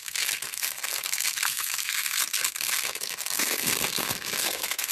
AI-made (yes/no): yes